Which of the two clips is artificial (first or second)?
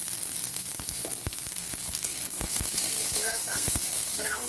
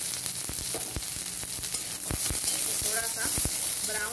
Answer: first